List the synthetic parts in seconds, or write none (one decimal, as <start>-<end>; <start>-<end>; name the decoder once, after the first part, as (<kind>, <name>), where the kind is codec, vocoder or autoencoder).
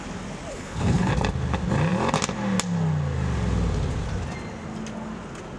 0.5-1.1 (codec, HILCodec)